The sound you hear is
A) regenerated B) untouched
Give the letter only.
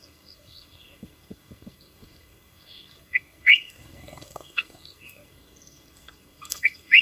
A